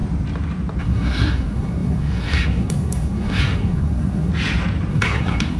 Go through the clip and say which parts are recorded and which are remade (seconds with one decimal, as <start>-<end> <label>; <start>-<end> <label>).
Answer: 0.0-0.8 recorded; 0.8-4.3 remade; 4.3-4.9 recorded; 4.9-5.6 remade